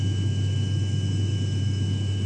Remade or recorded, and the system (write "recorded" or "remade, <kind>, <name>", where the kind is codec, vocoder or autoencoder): remade, autoencoder, DAC-VAE